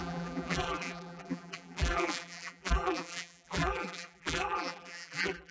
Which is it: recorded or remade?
remade